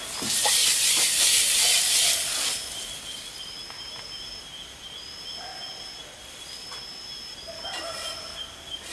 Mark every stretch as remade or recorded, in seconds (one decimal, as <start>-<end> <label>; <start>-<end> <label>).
0.0-8.9 recorded